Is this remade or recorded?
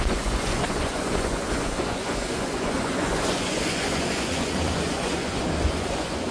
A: remade